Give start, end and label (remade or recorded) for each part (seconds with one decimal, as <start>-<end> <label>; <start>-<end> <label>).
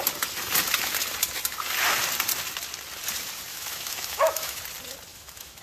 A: 0.0-3.5 recorded; 3.5-4.6 remade; 4.6-5.1 recorded; 5.1-5.6 remade